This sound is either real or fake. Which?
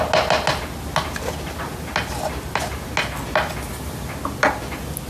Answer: real